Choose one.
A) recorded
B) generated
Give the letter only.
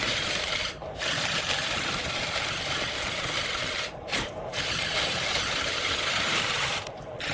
B